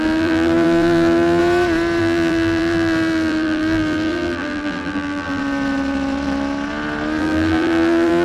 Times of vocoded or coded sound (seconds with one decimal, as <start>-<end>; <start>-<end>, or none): 0.0-1.4; 2.0-5.4; 7.2-8.2